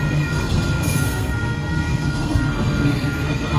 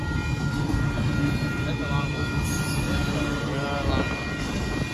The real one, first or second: second